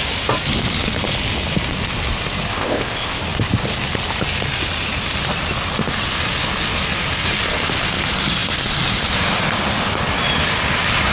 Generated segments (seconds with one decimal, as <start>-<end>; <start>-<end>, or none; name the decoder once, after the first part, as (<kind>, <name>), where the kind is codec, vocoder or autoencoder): 2.5-3.2 (codec, ZipCodec)

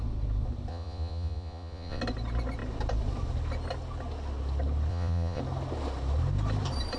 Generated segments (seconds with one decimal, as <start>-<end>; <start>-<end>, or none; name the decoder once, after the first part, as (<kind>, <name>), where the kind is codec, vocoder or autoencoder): 0.7-2.0 (vocoder, Vocos); 4.9-5.4

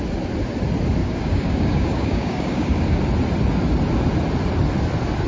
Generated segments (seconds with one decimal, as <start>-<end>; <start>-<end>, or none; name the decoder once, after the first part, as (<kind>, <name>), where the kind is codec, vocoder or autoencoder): 1.0-3.0 (codec, DAC)

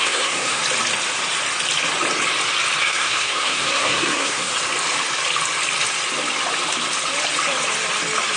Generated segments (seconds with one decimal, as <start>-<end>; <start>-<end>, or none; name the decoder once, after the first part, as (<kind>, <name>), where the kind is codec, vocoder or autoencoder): 0.0-0.6 (codec, SNAC); 2.8-4.5

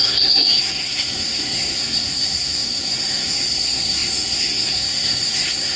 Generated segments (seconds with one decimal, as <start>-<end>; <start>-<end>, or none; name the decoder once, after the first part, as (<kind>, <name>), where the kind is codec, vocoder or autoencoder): 0.0-5.8 (codec, SNAC)

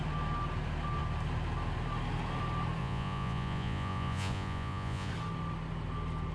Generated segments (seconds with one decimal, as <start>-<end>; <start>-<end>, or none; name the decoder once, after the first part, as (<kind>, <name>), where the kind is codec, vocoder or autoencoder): 2.8-5.1 (vocoder, Vocos)

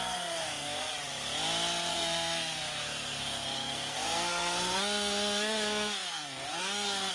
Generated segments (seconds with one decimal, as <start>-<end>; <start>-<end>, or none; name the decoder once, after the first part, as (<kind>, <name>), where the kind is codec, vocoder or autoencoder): 0.0-0.9 (codec, SNAC); 1.9-7.1

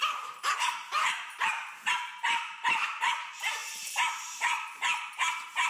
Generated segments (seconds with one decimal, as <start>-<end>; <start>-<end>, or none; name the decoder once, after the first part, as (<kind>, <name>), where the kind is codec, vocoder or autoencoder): 0.0-5.7 (vocoder, BigVGAN v2)